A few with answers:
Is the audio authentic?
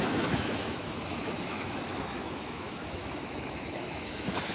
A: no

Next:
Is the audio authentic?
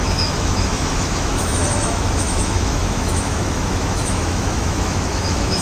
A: no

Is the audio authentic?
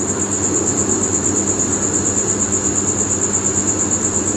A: yes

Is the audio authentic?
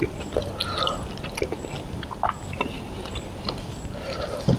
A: yes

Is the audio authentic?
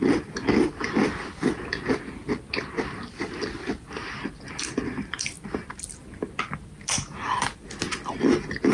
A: yes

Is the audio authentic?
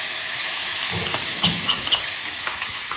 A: no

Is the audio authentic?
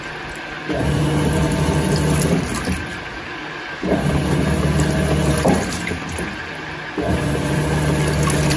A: yes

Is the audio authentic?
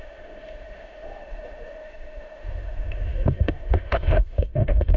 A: no